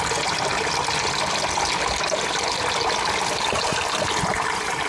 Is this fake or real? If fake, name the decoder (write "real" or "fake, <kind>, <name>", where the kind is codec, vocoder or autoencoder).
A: real